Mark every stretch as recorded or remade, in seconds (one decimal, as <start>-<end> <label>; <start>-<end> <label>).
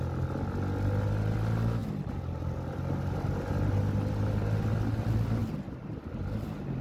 0.0-6.8 recorded